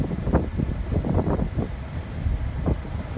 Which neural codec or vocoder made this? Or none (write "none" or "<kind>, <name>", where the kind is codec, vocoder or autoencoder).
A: none